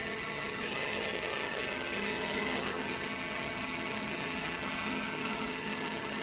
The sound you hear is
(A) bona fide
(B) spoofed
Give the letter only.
B